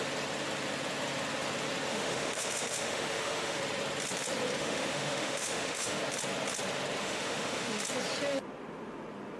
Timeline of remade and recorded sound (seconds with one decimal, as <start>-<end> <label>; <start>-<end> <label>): 0.0-1.9 recorded; 1.9-3.6 remade; 3.6-4.6 recorded; 4.6-6.0 remade; 6.0-7.0 recorded; 7.0-7.8 remade; 7.8-9.4 recorded